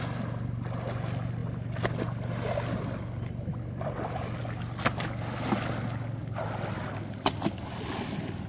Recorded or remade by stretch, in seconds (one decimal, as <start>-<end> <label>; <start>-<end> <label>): 0.0-8.5 recorded